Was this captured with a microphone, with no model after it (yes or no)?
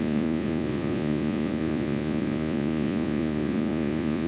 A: no